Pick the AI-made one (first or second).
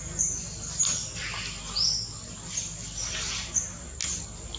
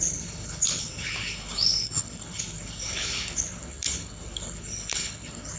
second